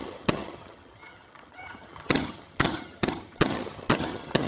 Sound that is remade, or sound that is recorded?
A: remade